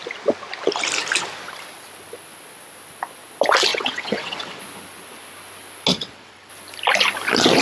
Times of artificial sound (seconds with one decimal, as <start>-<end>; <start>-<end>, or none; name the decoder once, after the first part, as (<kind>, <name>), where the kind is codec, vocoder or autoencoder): 3.7-4.6 (vocoder, WaveNeXt); 5.9-6.5